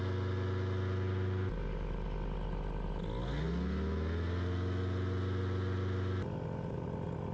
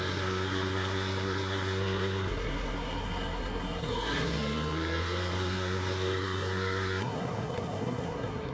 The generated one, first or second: second